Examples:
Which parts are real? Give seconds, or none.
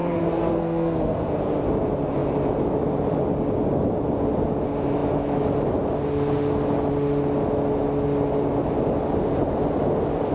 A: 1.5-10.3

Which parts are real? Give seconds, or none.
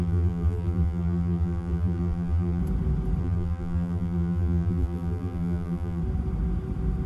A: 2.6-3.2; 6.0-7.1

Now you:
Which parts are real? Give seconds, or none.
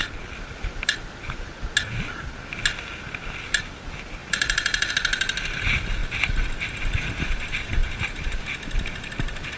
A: 1.5-4.2; 4.9-7.8; 8.4-9.6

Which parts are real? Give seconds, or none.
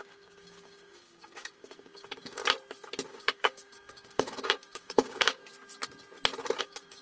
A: 2.4-3.1; 5.4-6.6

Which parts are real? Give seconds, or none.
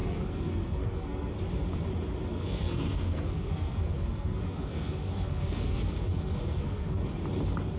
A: 1.3-2.3; 7.0-7.8